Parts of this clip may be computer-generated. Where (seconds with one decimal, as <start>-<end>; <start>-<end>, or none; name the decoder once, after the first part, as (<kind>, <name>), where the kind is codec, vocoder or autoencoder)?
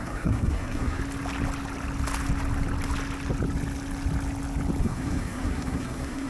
0.0-1.0 (codec, SNAC); 4.8-6.3